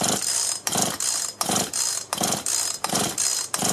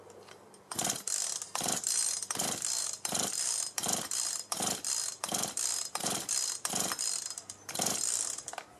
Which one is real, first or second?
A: first